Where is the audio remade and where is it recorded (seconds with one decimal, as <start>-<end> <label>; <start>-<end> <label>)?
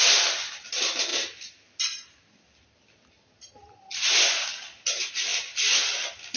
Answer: 0.0-6.4 recorded